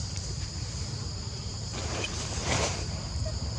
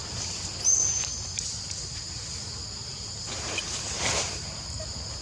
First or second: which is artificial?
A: first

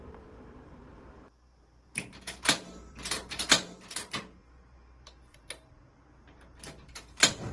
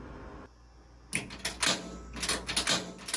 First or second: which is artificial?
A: first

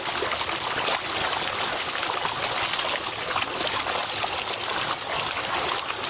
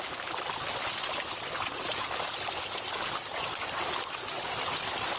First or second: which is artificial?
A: second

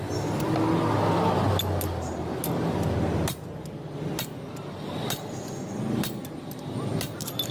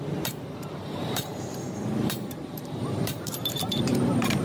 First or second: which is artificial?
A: second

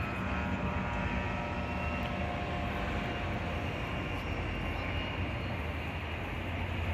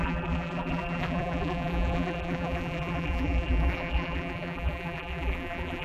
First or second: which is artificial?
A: second